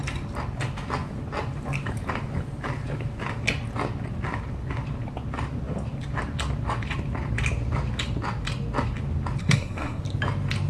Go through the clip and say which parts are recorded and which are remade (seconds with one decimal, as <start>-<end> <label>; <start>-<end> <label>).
0.0-9.4 recorded; 9.4-10.0 remade; 10.0-10.7 recorded